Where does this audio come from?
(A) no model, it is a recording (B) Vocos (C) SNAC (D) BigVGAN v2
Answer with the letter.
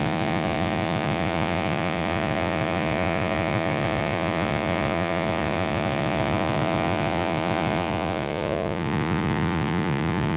B